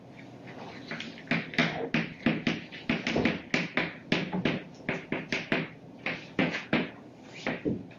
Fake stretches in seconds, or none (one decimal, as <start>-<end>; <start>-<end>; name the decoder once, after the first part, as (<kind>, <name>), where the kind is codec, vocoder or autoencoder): 6.4-6.9 (vocoder, Vocos)